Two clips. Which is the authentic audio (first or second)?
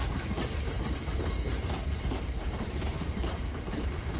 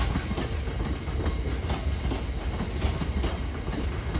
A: second